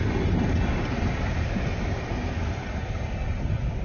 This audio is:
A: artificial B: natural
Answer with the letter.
B